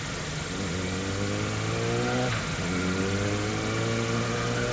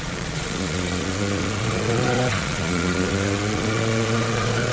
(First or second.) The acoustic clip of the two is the first